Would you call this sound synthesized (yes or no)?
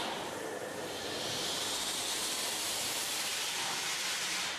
yes